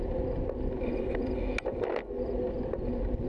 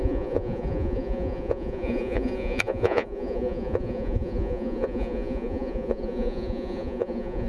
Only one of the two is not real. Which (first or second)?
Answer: second